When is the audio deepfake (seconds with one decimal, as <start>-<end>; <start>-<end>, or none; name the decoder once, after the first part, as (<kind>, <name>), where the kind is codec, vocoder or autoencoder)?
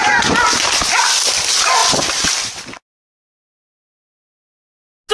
none